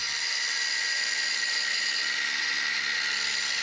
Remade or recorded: remade